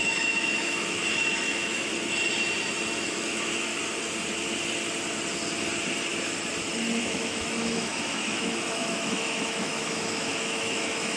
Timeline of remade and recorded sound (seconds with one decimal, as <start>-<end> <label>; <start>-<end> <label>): 0.0-1.9 remade; 1.9-3.0 recorded; 3.0-3.7 remade; 3.7-7.0 recorded; 7.0-11.2 remade